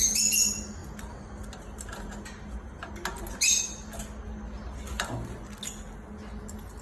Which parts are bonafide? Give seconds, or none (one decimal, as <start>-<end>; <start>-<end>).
0.0-6.8